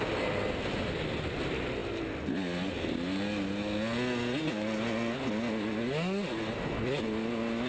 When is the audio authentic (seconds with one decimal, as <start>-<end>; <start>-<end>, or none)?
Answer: 0.0-7.7